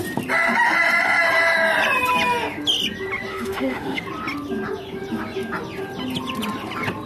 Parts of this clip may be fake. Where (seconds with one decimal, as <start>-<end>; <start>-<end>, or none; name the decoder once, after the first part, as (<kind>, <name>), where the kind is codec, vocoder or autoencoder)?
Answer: 3.3-4.0 (autoencoder, DAC-VAE)